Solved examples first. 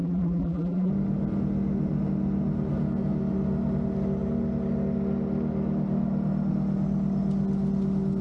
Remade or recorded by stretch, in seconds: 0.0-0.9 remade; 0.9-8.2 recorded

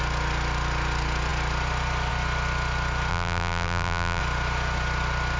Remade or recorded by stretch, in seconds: 0.0-3.1 recorded; 3.1-4.2 remade; 4.2-5.4 recorded

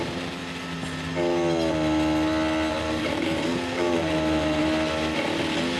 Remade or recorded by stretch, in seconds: 0.0-0.4 remade; 0.4-2.7 recorded; 2.7-4.6 remade; 4.6-5.8 recorded

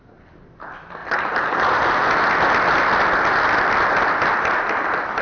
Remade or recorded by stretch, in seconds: 0.0-1.0 recorded; 1.0-2.2 remade; 2.2-5.2 recorded

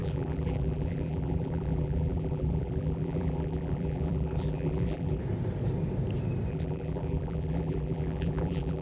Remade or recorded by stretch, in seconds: 0.0-5.2 remade; 5.2-6.5 recorded; 6.5-8.8 remade

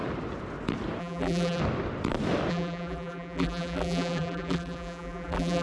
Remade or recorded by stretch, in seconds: 0.0-1.0 recorded; 1.0-1.6 remade; 1.6-2.5 recorded; 2.5-5.6 remade

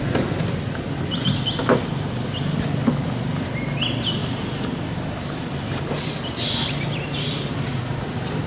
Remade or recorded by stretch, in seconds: 0.0-4.2 recorded; 4.2-5.8 remade; 5.8-7.5 recorded; 7.5-8.5 remade

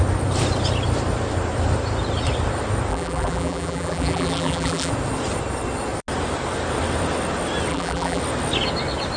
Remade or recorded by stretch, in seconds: 0.0-2.9 recorded; 2.9-4.9 remade; 4.9-7.7 recorded; 7.7-8.2 remade; 8.2-9.2 recorded